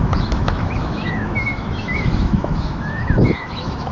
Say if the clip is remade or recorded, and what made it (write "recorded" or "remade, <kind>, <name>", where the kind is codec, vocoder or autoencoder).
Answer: remade, autoencoder, DAC-VAE